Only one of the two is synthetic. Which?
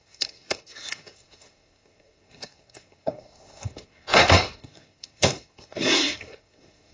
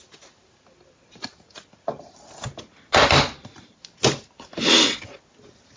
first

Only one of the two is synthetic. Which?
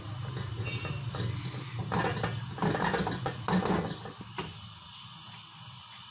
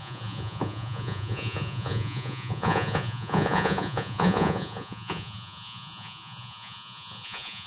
second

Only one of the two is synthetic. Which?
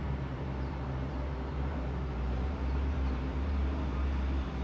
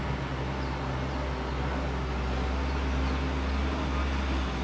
first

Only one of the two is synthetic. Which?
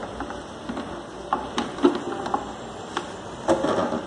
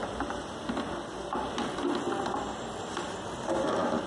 second